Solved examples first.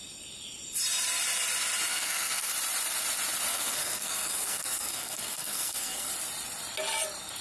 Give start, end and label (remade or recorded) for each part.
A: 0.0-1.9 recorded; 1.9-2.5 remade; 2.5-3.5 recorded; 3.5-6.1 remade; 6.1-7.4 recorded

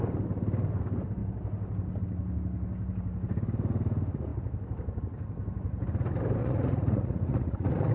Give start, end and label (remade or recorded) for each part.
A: 0.0-6.4 recorded; 6.4-7.9 remade

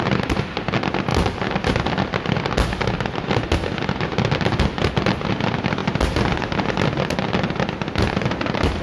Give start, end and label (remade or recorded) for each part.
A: 0.0-8.8 recorded

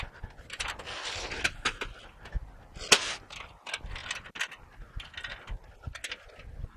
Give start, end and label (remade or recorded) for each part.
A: 0.0-6.8 recorded

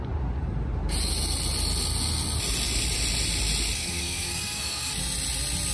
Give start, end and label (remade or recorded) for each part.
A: 0.0-3.8 recorded; 3.8-4.9 remade; 4.9-5.7 recorded